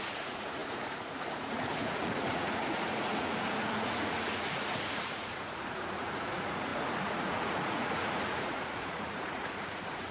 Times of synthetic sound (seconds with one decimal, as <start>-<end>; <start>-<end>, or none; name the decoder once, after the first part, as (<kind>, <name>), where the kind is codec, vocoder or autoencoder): 0.0-10.1 (vocoder, Vocos)